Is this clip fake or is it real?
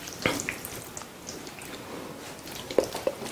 real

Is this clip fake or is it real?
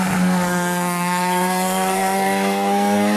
fake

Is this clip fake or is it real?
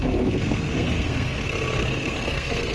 fake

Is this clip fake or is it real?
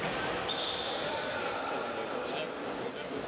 real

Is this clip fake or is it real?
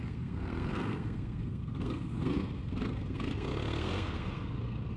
fake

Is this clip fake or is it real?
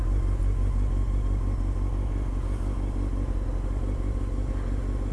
real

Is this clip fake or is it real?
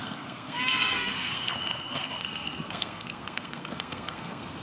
fake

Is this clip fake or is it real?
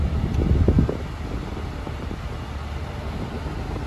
real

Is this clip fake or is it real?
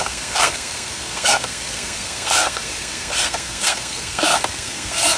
fake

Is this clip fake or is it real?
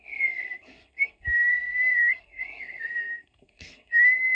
fake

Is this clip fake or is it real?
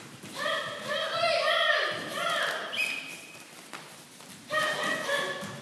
real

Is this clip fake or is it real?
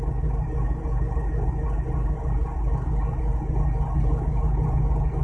real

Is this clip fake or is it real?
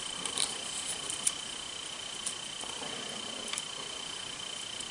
real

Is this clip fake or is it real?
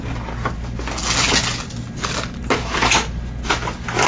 real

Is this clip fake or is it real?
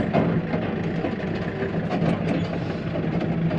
real